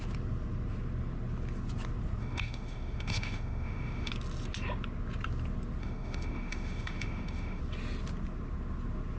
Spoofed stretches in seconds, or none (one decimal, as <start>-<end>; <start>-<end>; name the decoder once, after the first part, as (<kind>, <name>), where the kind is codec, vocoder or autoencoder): 2.2-4.1 (autoencoder, DAC-VAE); 5.8-7.6